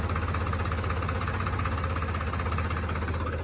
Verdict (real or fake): real